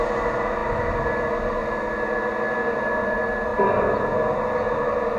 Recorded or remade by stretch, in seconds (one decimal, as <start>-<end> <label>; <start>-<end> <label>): 0.0-5.2 recorded